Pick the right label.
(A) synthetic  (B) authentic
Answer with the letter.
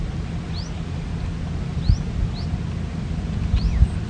B